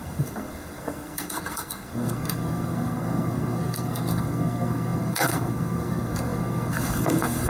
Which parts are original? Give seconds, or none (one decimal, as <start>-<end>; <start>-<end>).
none